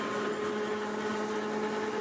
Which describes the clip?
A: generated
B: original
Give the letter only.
B